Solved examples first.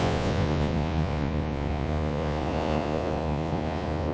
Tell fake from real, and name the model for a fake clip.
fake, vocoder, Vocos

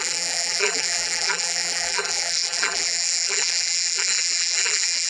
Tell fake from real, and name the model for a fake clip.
fake, vocoder, BigVGAN v2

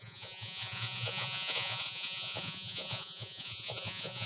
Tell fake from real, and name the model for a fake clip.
fake, vocoder, Vocos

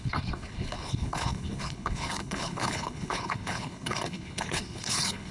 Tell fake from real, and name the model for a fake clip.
fake, codec, HILCodec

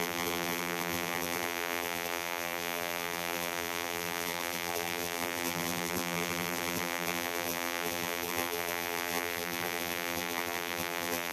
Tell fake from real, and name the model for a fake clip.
fake, vocoder, BigVGAN v2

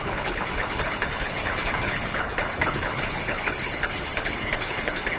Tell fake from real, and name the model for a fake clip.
fake, codec, HILCodec